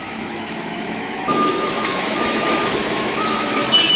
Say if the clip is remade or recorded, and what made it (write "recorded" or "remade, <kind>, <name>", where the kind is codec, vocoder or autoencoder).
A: remade, autoencoder, DAC-VAE